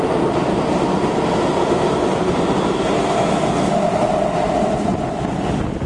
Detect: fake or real real